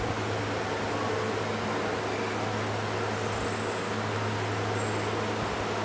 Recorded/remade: recorded